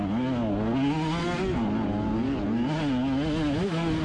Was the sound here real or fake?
real